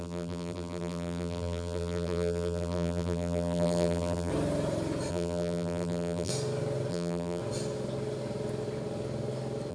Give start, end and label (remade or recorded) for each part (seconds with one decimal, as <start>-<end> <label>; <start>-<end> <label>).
0.0-4.3 remade; 4.3-5.1 recorded; 5.1-6.3 remade; 6.3-6.9 recorded; 6.9-7.4 remade; 7.4-9.7 recorded